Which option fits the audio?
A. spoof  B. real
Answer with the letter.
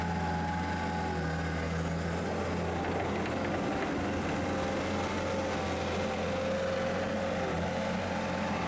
B